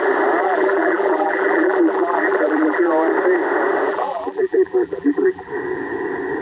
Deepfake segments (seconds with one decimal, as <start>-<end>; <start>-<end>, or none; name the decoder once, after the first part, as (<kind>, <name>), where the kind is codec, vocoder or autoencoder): 0.4-2.9 (vocoder, BigVGAN v2); 3.9-5.5